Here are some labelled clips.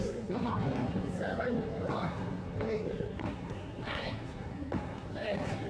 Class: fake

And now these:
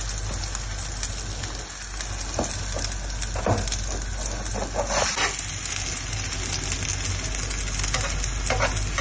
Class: real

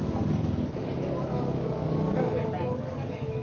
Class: fake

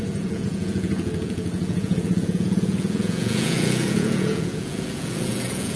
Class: fake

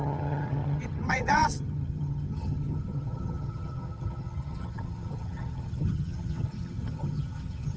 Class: fake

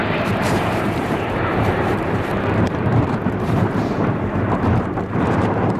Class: fake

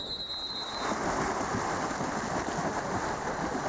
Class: real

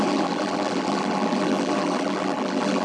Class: fake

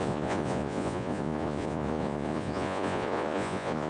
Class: fake